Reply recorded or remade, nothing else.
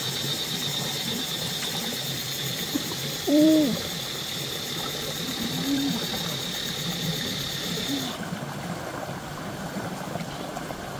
remade